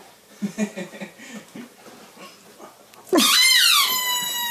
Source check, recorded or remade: recorded